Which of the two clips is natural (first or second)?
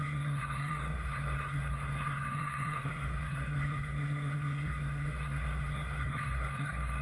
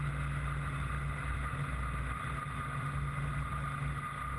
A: second